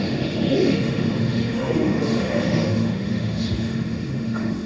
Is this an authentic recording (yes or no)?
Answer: no